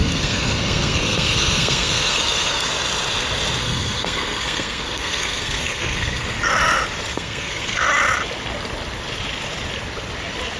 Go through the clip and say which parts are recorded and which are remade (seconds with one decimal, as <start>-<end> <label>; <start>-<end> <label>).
0.0-2.7 remade; 2.7-3.6 recorded; 3.6-6.5 remade; 6.5-7.1 recorded; 7.1-7.8 remade; 7.8-10.6 recorded